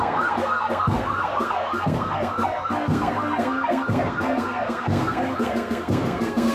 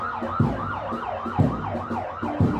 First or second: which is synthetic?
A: first